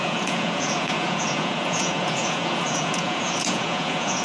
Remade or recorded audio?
remade